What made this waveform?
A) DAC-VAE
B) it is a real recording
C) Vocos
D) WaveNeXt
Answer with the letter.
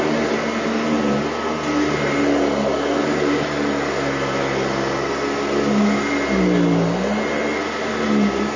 B